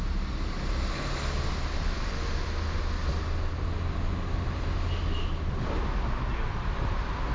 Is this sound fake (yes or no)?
no